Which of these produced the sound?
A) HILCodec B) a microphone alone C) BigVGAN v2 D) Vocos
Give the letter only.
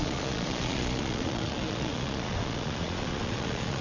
D